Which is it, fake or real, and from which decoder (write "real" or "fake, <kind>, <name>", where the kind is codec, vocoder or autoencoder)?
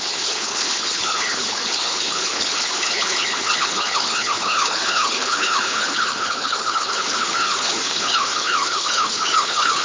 fake, codec, HILCodec